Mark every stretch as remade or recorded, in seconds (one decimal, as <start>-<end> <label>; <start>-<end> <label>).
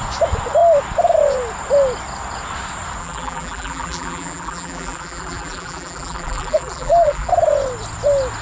0.0-3.0 recorded; 3.0-7.3 remade; 7.3-8.4 recorded